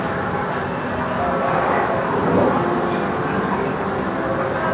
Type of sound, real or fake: real